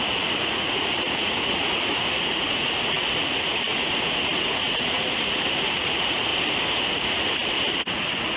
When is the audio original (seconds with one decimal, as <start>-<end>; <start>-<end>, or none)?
6.3-6.9